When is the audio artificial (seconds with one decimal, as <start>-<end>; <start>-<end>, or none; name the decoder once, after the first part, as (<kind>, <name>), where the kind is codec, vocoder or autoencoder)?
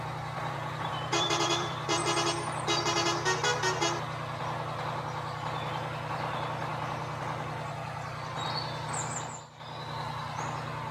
0.4-2.0 (vocoder, BigVGAN v2)